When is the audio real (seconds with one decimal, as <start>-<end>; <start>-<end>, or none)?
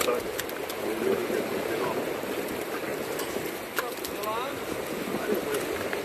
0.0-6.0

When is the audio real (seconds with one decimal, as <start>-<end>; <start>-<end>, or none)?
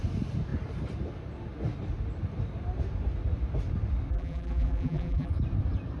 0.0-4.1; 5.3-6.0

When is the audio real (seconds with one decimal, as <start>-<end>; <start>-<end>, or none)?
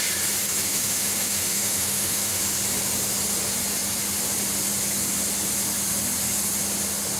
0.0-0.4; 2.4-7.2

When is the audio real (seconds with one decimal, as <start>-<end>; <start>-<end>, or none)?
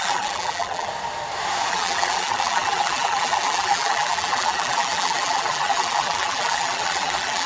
0.9-1.7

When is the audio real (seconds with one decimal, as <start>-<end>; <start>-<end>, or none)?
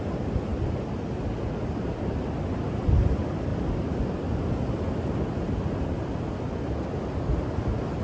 0.0-8.0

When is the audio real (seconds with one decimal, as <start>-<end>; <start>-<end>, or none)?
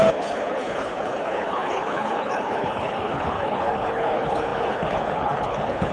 none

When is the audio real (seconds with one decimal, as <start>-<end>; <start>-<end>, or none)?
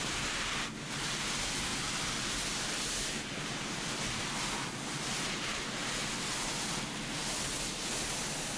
0.0-8.6